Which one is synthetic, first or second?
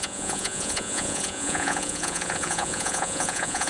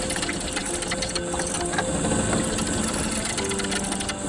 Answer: first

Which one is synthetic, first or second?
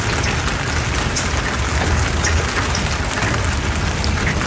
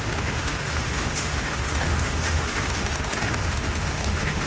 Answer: second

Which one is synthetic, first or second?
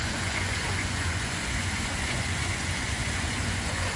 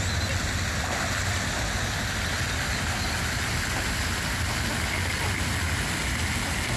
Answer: first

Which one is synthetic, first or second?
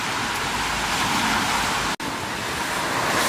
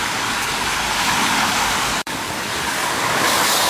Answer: second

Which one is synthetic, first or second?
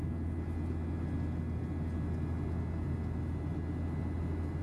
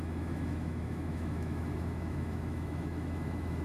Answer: second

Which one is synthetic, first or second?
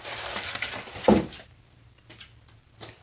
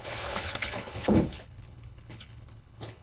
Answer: second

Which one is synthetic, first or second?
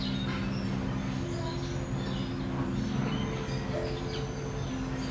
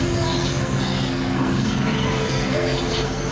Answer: second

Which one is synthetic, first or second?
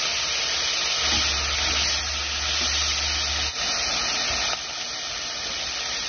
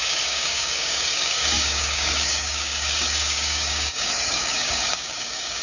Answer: second